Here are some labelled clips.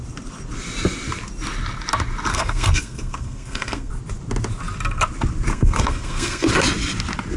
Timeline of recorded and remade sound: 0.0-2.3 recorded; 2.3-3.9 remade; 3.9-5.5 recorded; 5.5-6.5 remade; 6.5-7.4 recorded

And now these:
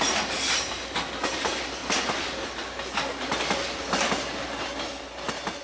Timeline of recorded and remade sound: 0.0-5.6 recorded

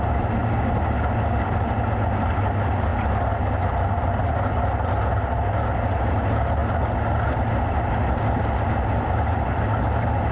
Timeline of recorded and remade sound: 0.0-10.3 recorded